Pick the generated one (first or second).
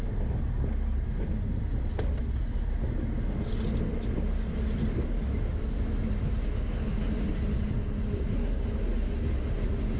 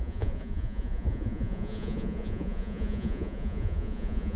second